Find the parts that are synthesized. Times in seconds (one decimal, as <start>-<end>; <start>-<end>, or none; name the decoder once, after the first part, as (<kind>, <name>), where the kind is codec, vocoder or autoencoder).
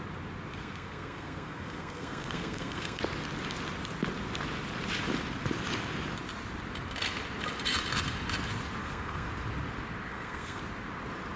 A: 0.5-3.0 (codec, SNAC); 8.8-9.3; 10.1-10.6